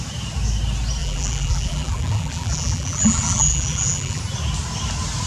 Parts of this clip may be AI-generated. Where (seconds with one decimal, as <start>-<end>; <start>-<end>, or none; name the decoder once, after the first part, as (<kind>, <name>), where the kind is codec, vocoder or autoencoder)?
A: 1.0-4.2 (vocoder, BigVGAN v2)